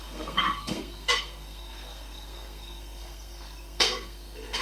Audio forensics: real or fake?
fake